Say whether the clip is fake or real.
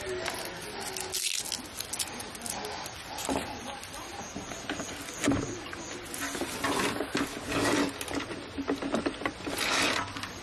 real